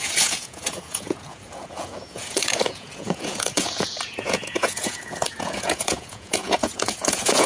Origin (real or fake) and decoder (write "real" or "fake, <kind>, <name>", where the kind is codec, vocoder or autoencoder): fake, vocoder, Vocos